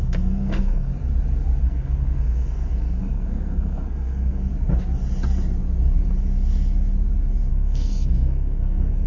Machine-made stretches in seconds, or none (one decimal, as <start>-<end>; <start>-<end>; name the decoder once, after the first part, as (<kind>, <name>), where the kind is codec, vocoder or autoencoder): 0.0-0.9 (codec, SNAC); 1.6-4.5; 7.5-9.1